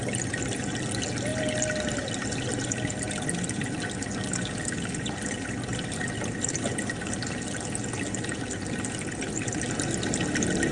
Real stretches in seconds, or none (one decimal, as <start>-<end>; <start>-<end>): 0.0-10.7